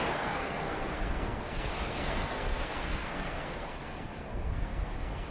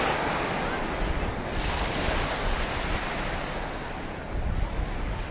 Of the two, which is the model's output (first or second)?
first